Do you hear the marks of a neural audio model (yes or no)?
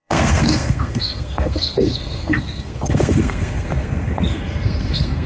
yes